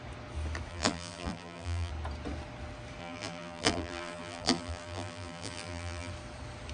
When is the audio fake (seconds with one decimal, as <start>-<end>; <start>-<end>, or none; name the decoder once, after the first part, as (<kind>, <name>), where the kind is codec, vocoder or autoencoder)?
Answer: 0.7-1.9 (vocoder, BigVGAN v2); 3.0-6.1